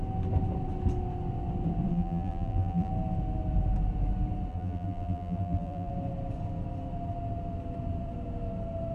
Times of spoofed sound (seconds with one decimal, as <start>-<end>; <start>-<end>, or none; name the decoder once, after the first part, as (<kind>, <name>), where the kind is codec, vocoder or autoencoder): 1.9-2.9 (vocoder, BigVGAN v2); 4.5-5.9